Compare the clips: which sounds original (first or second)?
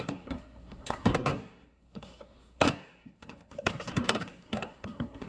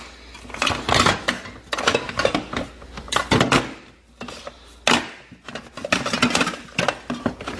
second